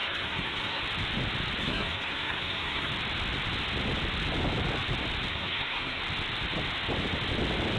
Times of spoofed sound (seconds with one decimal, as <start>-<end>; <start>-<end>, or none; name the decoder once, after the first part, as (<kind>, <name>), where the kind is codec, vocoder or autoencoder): 0.0-0.8 (codec, SNAC); 1.6-2.9; 5.3-6.0